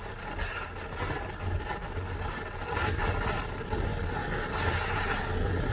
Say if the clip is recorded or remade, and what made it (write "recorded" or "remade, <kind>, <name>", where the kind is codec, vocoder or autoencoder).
recorded